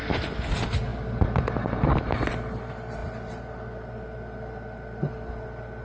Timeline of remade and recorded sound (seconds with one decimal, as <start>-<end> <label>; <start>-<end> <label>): 0.0-5.8 recorded